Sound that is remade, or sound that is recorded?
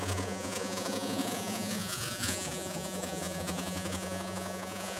remade